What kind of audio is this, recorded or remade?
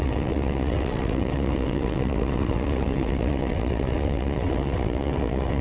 remade